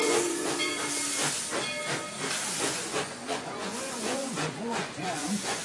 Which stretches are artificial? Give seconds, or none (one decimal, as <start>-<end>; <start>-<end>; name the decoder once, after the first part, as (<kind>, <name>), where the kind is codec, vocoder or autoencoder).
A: 0.0-0.7 (vocoder, Vocos); 2.6-5.6